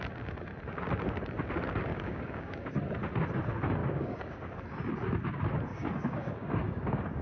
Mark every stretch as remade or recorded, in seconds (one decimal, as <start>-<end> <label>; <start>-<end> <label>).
0.0-1.9 recorded; 1.9-2.8 remade; 2.8-3.8 recorded; 3.8-4.5 remade; 4.5-5.7 recorded; 5.7-7.2 remade